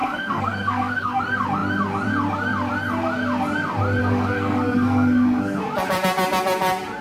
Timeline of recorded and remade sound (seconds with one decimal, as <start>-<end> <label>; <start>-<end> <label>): 0.0-1.2 remade; 1.2-4.0 recorded; 4.0-5.6 remade; 5.6-7.0 recorded